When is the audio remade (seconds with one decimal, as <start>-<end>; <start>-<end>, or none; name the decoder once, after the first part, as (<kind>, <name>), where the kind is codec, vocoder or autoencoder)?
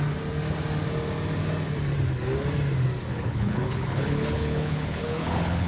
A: 3.1-5.7 (codec, HILCodec)